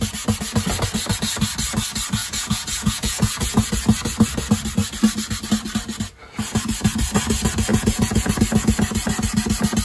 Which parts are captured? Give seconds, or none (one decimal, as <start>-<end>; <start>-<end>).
0.0-2.2; 3.7-7.7; 8.3-9.8